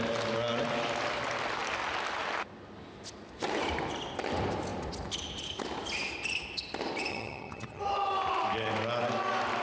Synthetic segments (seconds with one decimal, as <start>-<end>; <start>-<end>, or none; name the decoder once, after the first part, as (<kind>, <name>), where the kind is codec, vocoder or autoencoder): 7.1-7.8 (vocoder, HiFi-GAN)